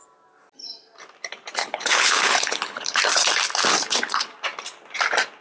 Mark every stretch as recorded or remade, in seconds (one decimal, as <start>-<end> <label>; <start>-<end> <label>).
0.0-1.6 recorded; 1.6-3.0 remade; 3.0-3.7 recorded; 3.7-4.3 remade; 4.3-5.4 recorded